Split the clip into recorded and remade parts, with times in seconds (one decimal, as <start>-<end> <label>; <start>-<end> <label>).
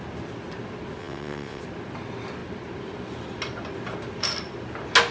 0.0-1.0 recorded; 1.0-1.6 remade; 1.6-5.1 recorded